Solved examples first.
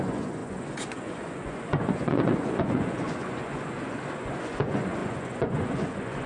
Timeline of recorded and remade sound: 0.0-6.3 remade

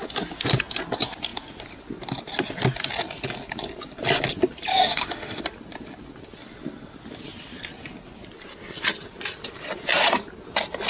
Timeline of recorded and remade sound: 0.0-4.7 recorded; 4.7-5.4 remade; 5.4-10.9 recorded

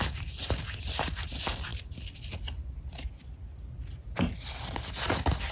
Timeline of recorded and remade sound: 0.0-5.5 recorded

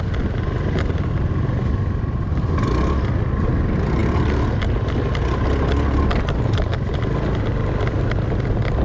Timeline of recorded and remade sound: 0.0-8.8 recorded

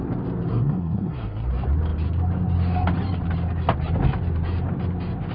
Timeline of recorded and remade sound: 0.0-0.5 recorded; 0.5-1.5 remade; 1.5-5.3 recorded

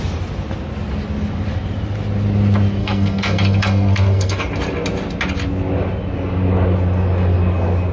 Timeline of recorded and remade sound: 0.0-2.8 recorded; 2.8-4.5 remade; 4.5-7.9 recorded

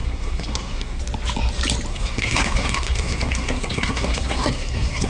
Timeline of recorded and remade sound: 0.0-1.0 remade; 1.0-1.9 recorded; 1.9-5.1 remade

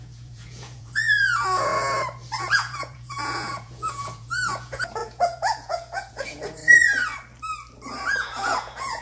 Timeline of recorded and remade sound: 0.0-1.7 remade; 1.7-2.4 recorded; 2.4-6.6 remade; 6.6-8.0 recorded; 8.0-9.0 remade